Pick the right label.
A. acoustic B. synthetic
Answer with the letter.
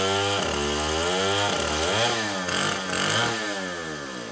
A